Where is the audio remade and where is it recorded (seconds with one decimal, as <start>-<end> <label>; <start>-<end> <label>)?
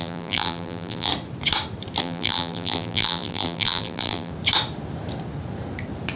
0.0-1.1 remade; 1.1-2.0 recorded; 2.0-4.3 remade; 4.3-6.2 recorded